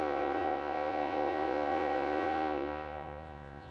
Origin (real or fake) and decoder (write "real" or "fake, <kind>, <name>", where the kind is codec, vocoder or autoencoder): fake, vocoder, Vocos